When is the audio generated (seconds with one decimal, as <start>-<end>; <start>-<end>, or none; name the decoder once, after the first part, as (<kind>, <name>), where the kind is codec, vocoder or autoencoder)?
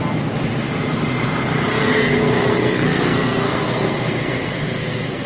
1.8-5.3 (codec, SNAC)